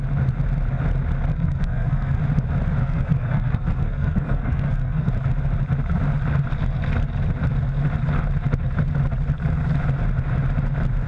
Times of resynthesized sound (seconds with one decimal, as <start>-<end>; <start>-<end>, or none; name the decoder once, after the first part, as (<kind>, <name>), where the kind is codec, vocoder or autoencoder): 1.3-2.2 (codec, SNAC); 2.8-5.1